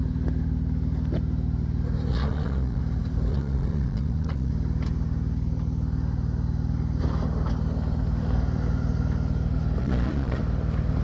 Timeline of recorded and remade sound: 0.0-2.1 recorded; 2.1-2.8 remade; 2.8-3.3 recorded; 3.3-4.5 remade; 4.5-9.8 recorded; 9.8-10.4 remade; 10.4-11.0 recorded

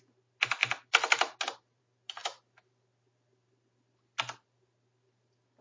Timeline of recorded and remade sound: 0.0-5.6 recorded

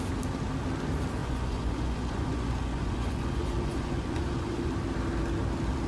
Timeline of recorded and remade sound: 0.0-1.2 recorded; 1.2-4.7 remade; 4.7-5.9 recorded

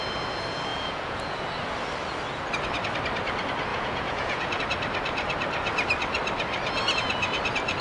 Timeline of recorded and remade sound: 0.0-0.7 recorded; 0.7-1.4 remade; 1.4-3.7 recorded; 3.7-4.6 remade; 4.6-7.8 recorded

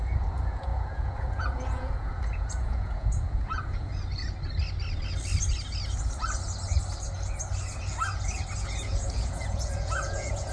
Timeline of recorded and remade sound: 0.0-3.9 remade; 3.9-8.6 recorded; 8.6-10.5 remade

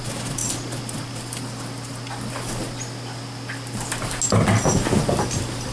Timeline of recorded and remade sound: 0.0-5.7 recorded

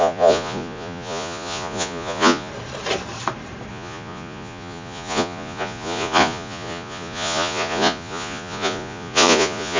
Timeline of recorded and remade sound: 0.0-2.5 remade; 2.5-3.7 recorded; 3.7-9.8 remade